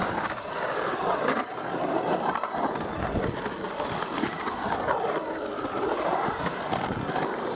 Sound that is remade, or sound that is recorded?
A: recorded